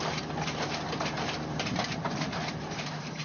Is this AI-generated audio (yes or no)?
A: yes